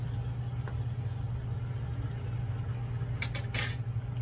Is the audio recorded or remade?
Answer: recorded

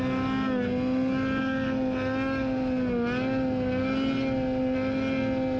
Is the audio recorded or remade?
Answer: recorded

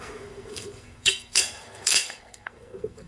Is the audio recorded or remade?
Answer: remade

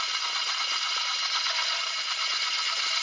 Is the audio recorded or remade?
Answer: recorded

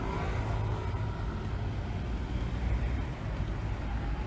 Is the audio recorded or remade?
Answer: recorded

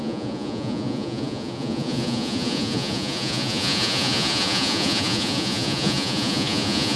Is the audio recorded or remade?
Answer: remade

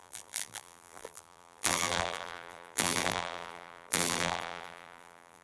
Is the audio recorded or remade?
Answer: remade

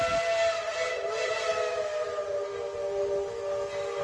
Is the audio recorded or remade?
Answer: recorded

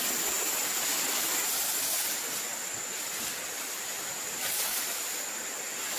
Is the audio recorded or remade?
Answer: recorded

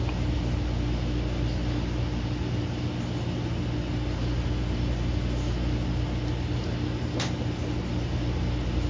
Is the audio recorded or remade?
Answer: recorded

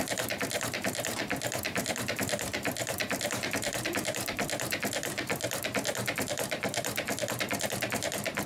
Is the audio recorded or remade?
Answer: remade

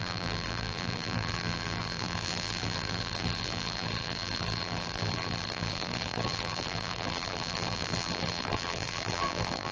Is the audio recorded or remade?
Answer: remade